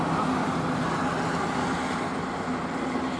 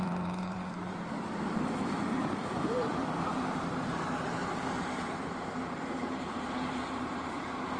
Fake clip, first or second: second